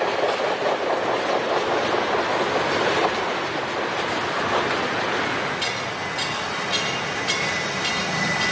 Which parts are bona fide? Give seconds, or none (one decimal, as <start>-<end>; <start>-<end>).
0.0-8.5